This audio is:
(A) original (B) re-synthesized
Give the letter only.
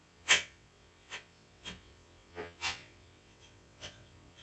B